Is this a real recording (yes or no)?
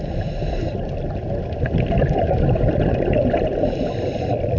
yes